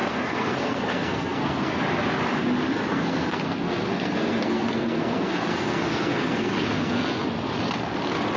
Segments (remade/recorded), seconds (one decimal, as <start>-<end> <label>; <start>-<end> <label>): 0.0-1.8 remade; 1.8-2.9 recorded; 2.9-6.9 remade; 6.9-8.4 recorded